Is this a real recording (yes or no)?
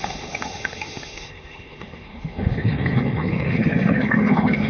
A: no